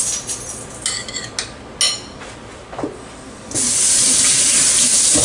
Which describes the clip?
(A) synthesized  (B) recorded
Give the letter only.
B